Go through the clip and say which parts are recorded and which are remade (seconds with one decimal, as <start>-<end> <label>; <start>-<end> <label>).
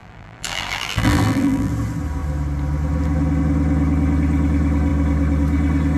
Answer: 0.0-1.7 remade; 1.7-6.0 recorded